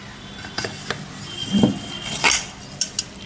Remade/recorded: recorded